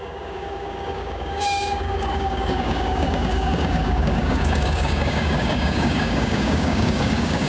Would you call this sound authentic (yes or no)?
no